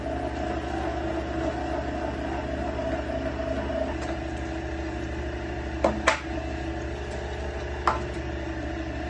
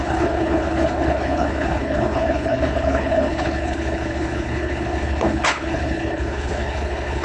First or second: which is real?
first